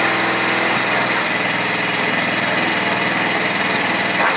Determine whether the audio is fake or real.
real